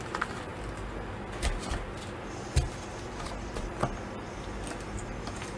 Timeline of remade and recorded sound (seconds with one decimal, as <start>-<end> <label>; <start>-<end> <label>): 0.0-5.6 recorded

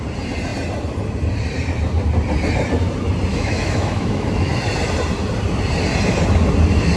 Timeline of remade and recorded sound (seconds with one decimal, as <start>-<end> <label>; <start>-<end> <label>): 0.0-3.3 recorded; 3.3-4.5 remade; 4.5-7.0 recorded